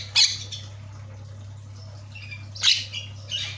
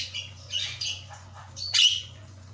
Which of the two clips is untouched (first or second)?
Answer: first